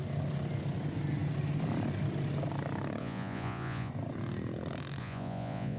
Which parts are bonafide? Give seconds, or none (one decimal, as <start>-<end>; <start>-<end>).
0.0-3.0; 3.9-5.0